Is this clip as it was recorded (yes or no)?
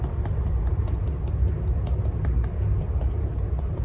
yes